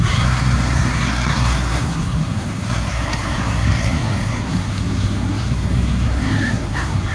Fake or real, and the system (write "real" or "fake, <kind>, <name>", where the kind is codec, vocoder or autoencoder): fake, codec, SNAC